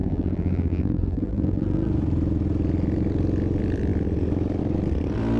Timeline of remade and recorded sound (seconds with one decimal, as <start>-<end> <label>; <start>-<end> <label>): 0.0-1.9 remade; 1.9-5.4 recorded